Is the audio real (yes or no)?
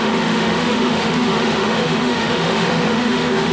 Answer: no